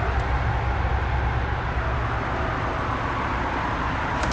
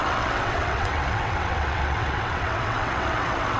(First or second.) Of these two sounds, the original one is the first